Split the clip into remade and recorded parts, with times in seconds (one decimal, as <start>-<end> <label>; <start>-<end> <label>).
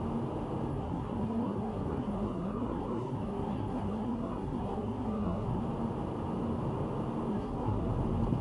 0.0-0.7 recorded; 0.7-5.6 remade; 5.6-7.3 recorded; 7.3-7.9 remade; 7.9-8.4 recorded